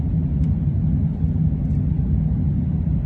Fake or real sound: real